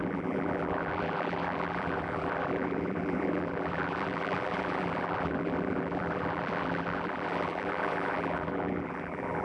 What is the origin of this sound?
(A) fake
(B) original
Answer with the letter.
A